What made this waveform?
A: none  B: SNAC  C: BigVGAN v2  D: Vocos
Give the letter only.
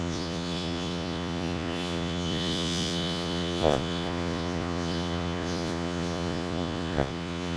D